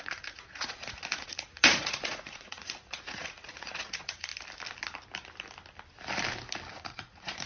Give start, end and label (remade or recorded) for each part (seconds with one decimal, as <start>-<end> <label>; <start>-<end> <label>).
0.0-4.3 remade; 4.3-6.7 recorded; 6.7-7.5 remade